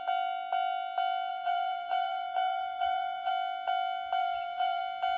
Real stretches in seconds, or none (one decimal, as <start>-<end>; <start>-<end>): 0.0-1.3; 3.3-4.2; 4.8-5.2